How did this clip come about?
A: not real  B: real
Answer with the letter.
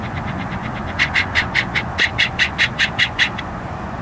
A